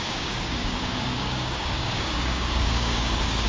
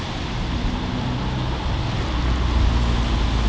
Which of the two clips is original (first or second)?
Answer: second